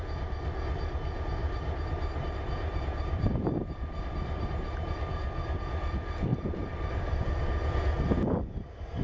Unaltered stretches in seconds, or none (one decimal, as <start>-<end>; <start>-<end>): 0.0-1.4; 4.1-6.3; 7.2-9.0